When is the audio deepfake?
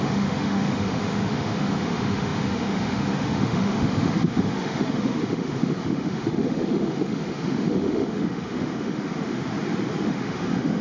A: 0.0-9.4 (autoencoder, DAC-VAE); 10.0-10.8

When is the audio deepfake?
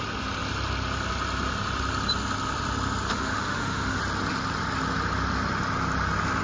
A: 3.1-4.0 (autoencoder, DAC-VAE)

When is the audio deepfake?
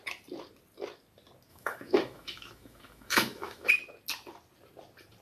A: 1.5-3.7 (autoencoder, DAC-VAE)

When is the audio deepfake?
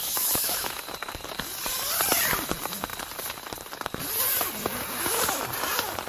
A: 0.0-0.8 (autoencoder, DAC-VAE)